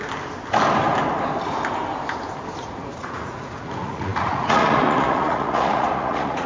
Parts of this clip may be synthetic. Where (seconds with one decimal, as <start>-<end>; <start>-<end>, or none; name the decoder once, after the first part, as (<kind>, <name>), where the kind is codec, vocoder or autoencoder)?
2.6-6.5 (vocoder, Vocos)